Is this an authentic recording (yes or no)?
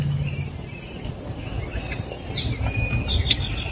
yes